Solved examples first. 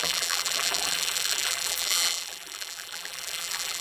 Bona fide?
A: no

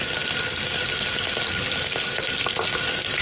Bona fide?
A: yes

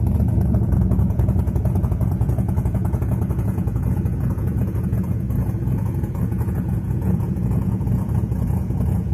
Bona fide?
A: no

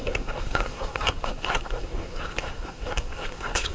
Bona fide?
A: no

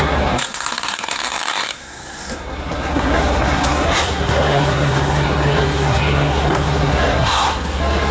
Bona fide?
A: no